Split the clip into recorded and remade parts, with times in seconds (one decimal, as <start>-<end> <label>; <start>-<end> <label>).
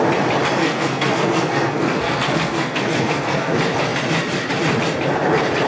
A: 0.0-0.6 recorded; 0.6-3.5 remade; 3.5-5.7 recorded